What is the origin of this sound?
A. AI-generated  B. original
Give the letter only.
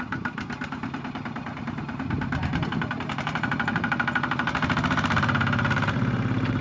A